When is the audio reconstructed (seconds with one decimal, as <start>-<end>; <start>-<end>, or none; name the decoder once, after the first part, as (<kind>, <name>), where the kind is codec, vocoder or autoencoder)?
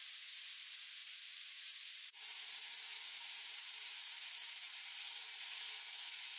0.0-0.5 (vocoder, BigVGAN v2); 1.0-4.8